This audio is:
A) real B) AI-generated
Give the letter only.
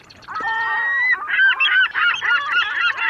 B